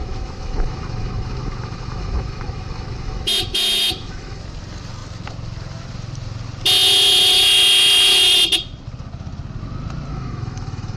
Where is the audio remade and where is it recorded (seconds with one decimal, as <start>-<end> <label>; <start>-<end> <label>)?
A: 0.0-4.4 remade; 4.4-10.1 recorded; 10.1-11.0 remade